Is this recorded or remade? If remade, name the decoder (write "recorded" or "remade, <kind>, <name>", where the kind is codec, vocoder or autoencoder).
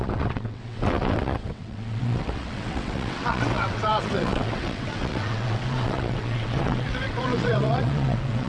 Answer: remade, vocoder, WaveNeXt